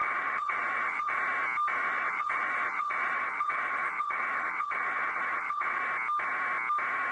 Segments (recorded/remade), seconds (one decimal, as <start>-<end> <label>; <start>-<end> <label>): 0.0-1.2 remade; 1.2-1.8 recorded; 1.8-5.8 remade; 5.8-7.1 recorded